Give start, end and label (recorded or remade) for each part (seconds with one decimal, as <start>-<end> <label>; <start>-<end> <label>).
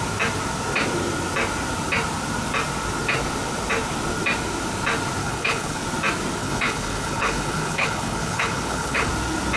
0.0-5.2 recorded; 5.2-5.8 remade; 5.8-6.4 recorded; 6.4-9.1 remade; 9.1-9.6 recorded